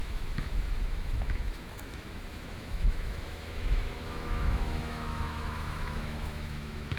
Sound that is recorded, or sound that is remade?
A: remade